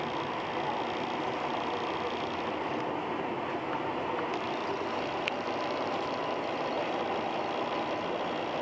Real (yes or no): yes